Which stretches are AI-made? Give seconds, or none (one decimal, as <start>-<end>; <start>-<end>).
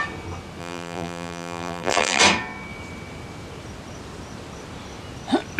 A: 0.6-2.2